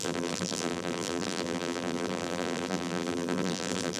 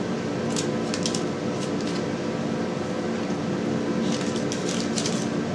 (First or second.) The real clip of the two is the second